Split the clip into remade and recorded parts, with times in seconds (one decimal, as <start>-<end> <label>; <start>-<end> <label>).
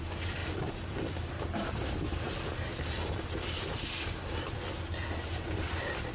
0.0-0.4 recorded; 0.4-1.3 remade; 1.3-2.7 recorded; 2.7-4.5 remade; 4.5-6.1 recorded